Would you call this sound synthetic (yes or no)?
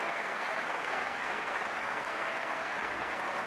yes